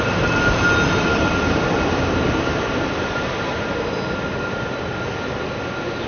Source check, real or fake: real